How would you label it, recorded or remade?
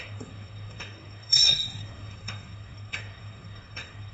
remade